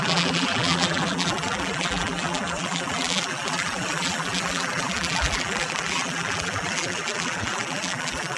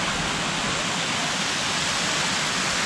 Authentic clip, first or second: second